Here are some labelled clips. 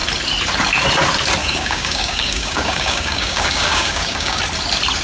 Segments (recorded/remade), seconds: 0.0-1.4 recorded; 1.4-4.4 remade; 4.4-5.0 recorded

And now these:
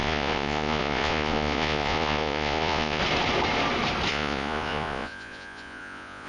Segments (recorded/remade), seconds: 0.0-3.0 remade; 3.0-4.1 recorded; 4.1-6.3 remade

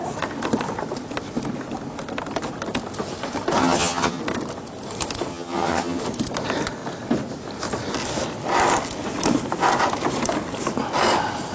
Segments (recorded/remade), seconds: 0.0-3.6 recorded; 3.6-4.2 remade; 4.2-5.3 recorded; 5.3-6.0 remade; 6.0-11.5 recorded

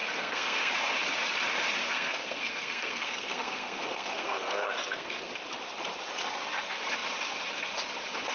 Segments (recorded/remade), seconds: 0.0-0.7 remade; 0.7-1.8 recorded; 1.8-5.3 remade; 5.3-8.3 recorded

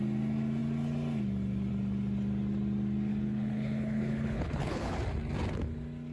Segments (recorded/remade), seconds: 0.0-3.1 recorded; 3.1-5.0 remade; 5.0-6.1 recorded

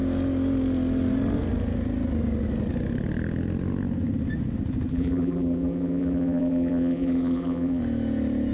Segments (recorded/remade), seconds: 0.0-4.9 recorded; 4.9-7.8 remade; 7.8-8.5 recorded